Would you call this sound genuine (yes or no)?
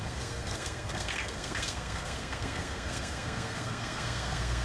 no